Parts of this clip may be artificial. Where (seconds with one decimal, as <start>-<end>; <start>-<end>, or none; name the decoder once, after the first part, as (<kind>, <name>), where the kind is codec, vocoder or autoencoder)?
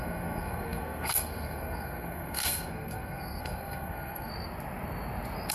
0.0-4.3 (codec, SNAC)